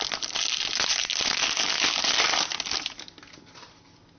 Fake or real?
real